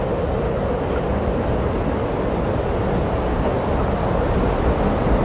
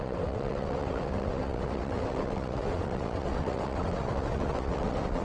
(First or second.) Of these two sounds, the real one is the first